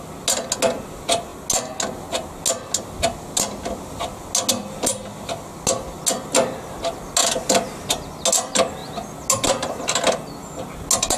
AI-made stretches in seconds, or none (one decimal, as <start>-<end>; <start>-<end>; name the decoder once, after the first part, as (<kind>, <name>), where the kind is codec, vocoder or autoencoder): 7.2-7.9 (vocoder, BigVGAN v2)